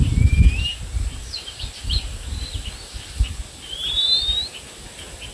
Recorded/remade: recorded